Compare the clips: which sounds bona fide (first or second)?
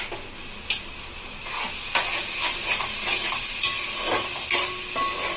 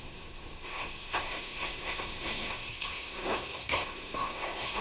first